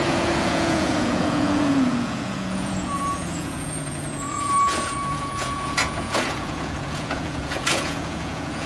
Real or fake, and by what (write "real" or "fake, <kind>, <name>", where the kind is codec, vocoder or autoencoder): fake, vocoder, Vocos